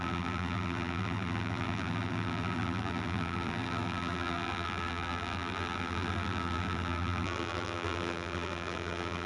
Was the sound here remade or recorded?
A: remade